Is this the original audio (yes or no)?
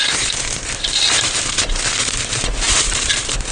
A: yes